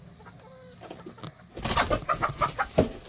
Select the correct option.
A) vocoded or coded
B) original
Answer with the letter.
B